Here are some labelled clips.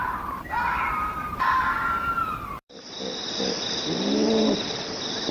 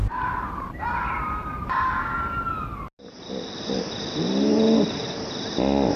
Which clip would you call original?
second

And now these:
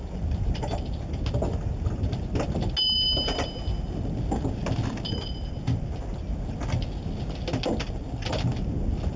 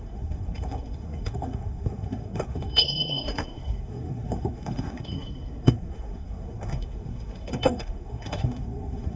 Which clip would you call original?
first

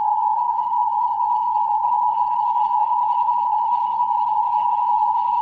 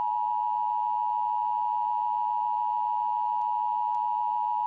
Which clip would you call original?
second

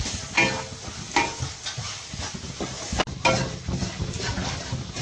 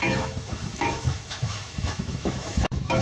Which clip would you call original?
first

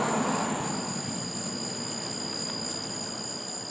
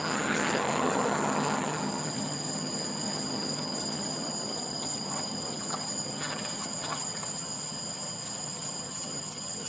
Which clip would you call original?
first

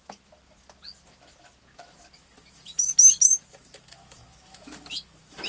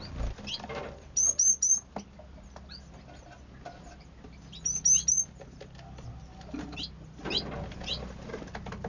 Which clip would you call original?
second